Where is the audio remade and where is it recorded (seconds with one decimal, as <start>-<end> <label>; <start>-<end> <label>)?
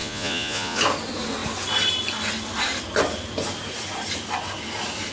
0.0-0.8 remade; 0.8-5.1 recorded